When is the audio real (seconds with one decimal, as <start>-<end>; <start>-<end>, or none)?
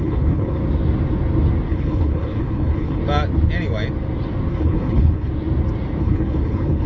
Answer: 0.6-1.7; 3.0-4.5; 5.3-6.0